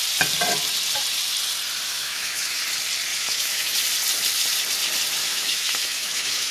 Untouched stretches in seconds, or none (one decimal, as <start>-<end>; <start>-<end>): 0.0-1.9; 2.6-3.1; 3.8-5.2